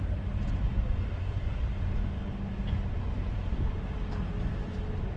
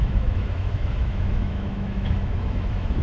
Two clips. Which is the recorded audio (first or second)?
first